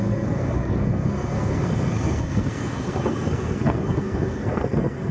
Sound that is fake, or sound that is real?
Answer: fake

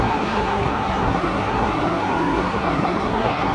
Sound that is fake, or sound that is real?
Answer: fake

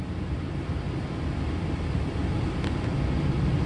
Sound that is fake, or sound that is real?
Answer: real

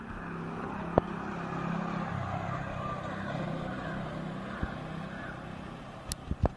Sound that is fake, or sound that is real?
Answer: real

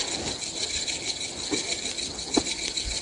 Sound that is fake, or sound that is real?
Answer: real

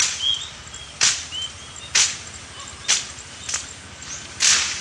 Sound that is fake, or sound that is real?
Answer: real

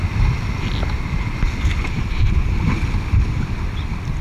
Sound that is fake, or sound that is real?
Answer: real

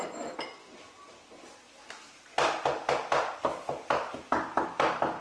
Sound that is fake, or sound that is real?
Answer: real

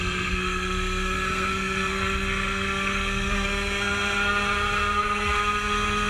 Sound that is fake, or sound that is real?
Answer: fake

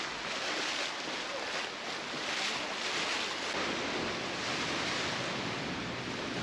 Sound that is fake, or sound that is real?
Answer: real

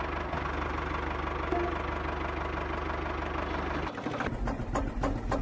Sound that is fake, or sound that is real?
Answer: real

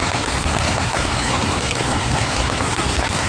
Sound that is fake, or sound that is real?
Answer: fake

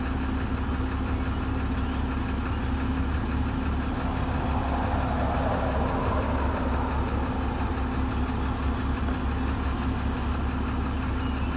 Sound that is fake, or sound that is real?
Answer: real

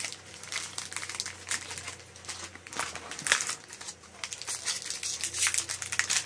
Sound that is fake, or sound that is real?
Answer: real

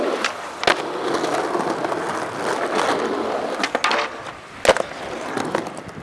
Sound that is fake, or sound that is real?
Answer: real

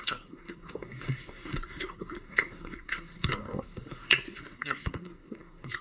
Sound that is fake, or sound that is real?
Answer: fake